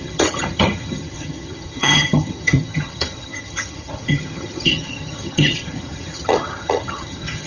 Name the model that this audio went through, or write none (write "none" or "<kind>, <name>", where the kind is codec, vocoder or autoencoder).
vocoder, HiFi-GAN